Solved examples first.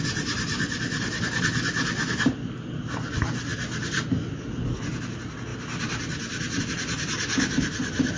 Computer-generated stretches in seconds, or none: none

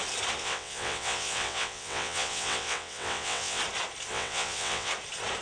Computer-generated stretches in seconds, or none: 0.4-3.6 (vocoder, WaveNeXt); 4.1-4.9